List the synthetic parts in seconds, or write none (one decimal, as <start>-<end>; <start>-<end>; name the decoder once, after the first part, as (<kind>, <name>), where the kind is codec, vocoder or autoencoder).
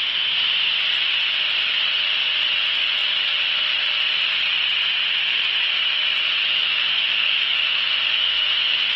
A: 6.6-9.0 (autoencoder, DAC-VAE)